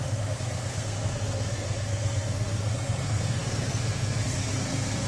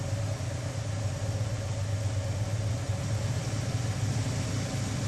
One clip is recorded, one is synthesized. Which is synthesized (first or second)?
first